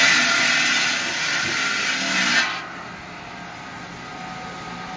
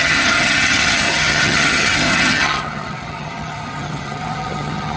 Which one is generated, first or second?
second